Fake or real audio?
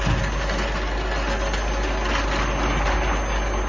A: real